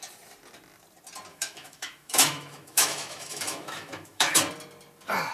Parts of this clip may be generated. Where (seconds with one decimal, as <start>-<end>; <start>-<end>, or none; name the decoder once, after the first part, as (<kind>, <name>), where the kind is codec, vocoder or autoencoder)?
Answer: 1.3-4.4 (autoencoder, DAC-VAE)

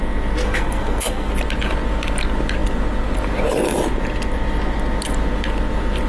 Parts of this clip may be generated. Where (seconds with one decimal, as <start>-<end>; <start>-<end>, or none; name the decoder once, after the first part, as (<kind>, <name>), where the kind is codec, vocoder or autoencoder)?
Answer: 0.4-1.3 (codec, SNAC)

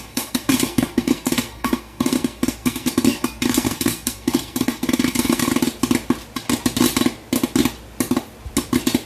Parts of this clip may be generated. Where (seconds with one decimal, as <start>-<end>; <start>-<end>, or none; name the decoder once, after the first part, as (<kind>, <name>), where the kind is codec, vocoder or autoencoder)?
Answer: 0.0-5.5 (codec, SNAC)

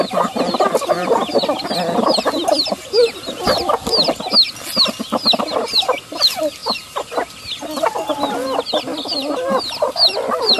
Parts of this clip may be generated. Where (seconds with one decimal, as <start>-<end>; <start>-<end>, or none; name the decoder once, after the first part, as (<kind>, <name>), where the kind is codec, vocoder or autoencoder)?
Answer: 6.6-7.1 (vocoder, BigVGAN v2)